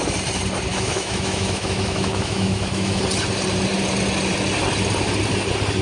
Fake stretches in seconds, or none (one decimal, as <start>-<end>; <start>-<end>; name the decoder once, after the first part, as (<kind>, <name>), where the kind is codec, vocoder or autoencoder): 0.7-3.0 (autoencoder, DAC-VAE)